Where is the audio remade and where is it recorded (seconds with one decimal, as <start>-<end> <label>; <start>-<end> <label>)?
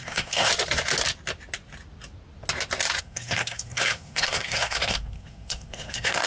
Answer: 0.0-0.5 remade; 0.5-3.0 recorded; 3.0-6.3 remade